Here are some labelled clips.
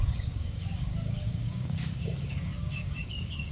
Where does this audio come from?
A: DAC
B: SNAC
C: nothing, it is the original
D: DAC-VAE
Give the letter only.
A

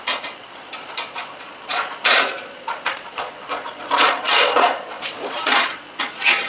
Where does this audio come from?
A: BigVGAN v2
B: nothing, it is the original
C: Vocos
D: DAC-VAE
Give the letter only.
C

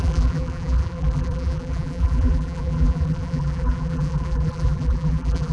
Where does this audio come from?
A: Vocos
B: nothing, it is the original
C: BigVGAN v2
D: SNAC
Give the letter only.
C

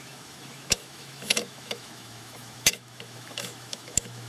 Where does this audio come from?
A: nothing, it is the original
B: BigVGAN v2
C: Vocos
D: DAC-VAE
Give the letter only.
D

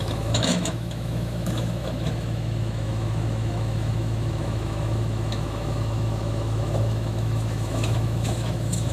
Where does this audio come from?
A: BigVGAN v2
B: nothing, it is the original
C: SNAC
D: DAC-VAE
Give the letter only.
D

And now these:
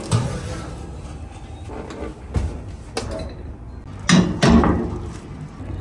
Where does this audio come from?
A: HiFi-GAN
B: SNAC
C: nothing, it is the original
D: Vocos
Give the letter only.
C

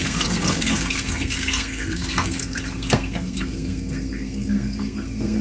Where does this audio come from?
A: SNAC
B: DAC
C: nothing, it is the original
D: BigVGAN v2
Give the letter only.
A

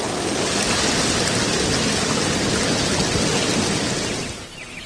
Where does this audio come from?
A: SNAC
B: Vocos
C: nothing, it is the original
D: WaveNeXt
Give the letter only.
C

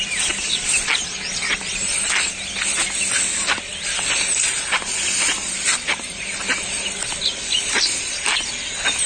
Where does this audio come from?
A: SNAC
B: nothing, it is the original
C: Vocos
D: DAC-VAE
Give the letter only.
B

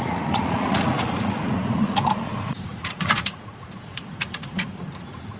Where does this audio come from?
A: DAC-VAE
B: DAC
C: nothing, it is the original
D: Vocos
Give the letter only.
D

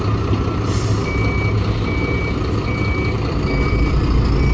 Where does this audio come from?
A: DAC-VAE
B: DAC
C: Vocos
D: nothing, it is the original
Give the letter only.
D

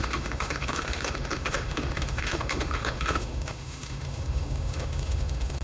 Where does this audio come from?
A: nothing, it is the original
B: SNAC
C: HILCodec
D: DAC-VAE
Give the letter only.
D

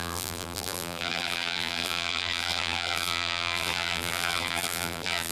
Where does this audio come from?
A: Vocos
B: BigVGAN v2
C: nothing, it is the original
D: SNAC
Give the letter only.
B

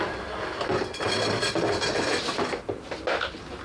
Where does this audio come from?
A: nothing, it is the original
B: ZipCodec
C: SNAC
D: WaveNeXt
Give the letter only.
A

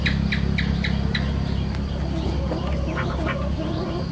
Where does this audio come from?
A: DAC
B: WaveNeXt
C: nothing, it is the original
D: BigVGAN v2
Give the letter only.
C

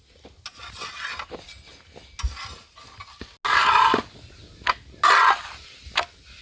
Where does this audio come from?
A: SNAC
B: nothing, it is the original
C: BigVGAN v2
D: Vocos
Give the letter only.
B